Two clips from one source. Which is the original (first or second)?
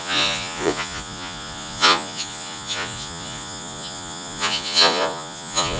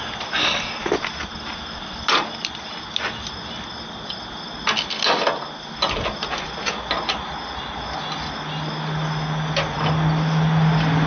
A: second